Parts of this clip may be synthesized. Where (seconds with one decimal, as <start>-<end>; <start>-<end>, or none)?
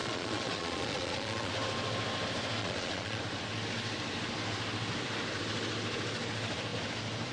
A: 0.0-1.5; 2.6-3.2